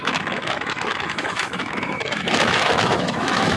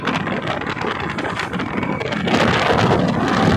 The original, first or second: second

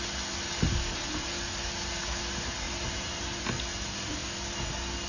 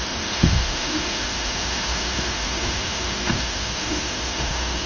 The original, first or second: first